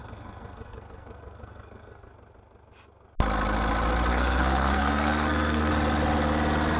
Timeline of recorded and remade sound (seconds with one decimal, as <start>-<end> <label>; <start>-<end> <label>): 0.0-2.1 remade; 2.1-4.1 recorded; 4.1-5.7 remade; 5.7-6.8 recorded